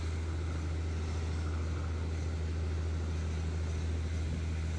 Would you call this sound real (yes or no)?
yes